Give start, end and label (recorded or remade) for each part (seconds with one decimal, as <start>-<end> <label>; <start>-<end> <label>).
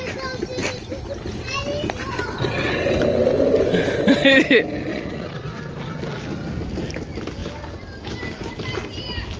0.0-4.9 recorded; 4.9-5.5 remade; 5.5-9.4 recorded